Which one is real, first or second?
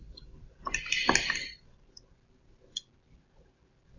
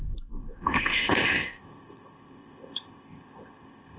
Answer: first